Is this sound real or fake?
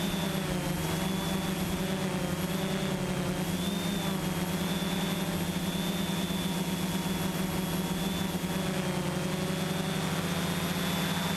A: real